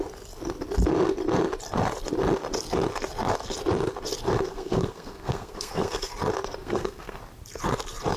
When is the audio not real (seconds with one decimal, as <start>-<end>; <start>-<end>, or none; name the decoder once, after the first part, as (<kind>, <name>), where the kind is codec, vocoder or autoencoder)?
4.5-6.1 (codec, SNAC); 6.6-7.2